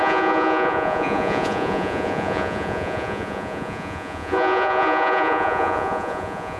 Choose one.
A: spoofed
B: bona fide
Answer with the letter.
A